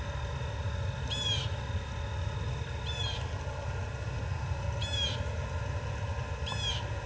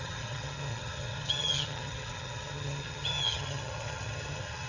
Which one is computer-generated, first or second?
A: second